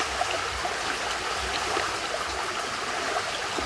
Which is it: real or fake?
real